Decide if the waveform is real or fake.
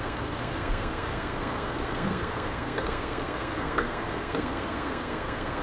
fake